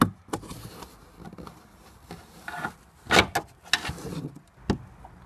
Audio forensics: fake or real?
real